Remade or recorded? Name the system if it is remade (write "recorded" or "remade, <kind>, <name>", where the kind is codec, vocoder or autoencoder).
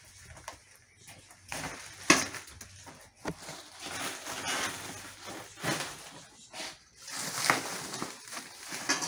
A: recorded